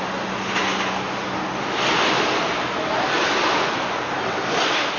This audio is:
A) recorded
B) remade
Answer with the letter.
A